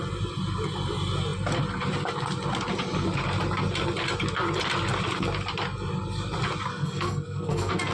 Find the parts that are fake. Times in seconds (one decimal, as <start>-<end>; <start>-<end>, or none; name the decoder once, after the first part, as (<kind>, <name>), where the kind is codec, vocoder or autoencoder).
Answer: 6.7-7.9 (codec, SNAC)

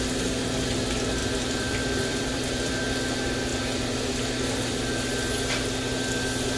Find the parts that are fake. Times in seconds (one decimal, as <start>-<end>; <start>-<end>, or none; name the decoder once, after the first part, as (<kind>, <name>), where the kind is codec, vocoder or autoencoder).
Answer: 1.2-2.7 (vocoder, BigVGAN v2)

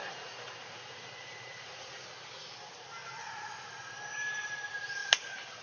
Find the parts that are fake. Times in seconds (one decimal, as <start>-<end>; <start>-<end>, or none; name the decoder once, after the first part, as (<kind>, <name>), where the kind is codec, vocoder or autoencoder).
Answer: 0.0-2.0 (vocoder, Vocos)

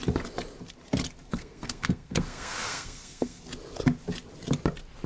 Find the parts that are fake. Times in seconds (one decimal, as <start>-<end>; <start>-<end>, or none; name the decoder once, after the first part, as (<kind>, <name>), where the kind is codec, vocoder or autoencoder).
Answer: 1.3-3.4 (codec, SNAC)

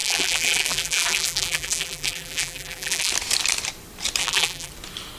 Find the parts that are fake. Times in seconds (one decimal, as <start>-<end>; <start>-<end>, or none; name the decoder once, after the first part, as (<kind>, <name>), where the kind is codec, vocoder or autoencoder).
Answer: 0.0-3.1 (vocoder, BigVGAN v2); 4.2-4.7